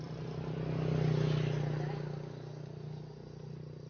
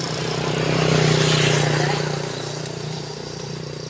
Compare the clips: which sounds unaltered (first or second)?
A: first